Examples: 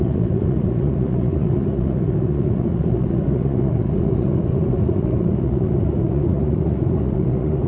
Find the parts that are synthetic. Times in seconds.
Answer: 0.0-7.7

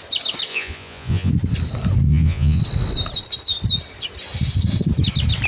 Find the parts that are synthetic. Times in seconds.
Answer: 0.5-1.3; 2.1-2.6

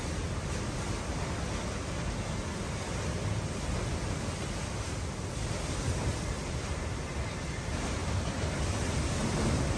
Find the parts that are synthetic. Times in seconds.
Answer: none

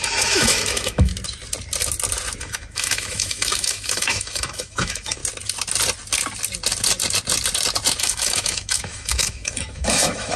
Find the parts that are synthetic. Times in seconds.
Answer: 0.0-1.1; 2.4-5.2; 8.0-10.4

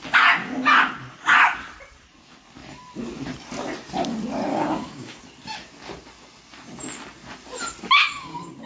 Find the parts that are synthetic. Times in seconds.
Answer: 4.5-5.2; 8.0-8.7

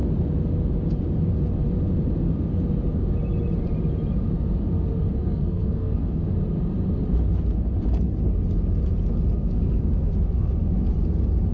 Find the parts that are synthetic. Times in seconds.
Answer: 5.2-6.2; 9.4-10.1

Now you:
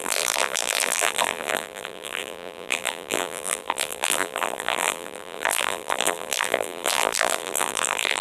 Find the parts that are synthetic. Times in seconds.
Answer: 0.0-8.2